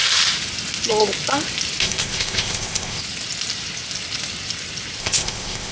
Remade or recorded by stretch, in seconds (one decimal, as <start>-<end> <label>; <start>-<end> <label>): 0.0-1.8 recorded; 1.8-3.0 remade; 3.0-5.0 recorded; 5.0-5.7 remade

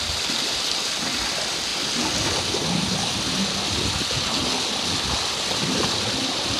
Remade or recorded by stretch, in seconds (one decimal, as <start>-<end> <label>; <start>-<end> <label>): 0.0-6.6 recorded